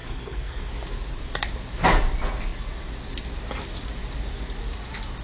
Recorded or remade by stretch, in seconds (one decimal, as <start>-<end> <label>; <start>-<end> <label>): 0.0-0.7 remade; 0.7-5.2 recorded